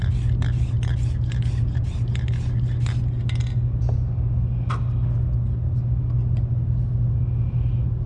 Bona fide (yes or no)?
yes